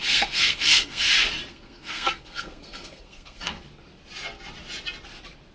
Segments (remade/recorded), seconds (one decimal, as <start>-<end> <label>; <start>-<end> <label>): 0.0-1.1 remade; 1.1-1.5 recorded; 1.5-3.6 remade; 3.6-5.5 recorded